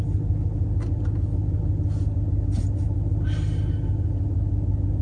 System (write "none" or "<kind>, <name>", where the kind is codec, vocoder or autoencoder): none